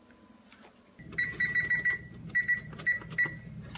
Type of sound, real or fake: real